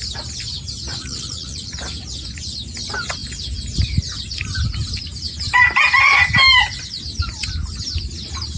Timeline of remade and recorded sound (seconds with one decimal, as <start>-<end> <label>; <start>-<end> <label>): 0.0-0.9 recorded; 0.9-1.8 remade; 1.8-8.6 recorded